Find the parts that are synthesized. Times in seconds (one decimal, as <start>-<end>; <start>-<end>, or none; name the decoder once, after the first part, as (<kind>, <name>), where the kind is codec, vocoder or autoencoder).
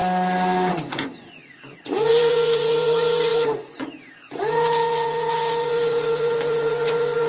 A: 0.7-7.3 (vocoder, Vocos)